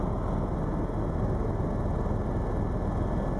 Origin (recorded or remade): recorded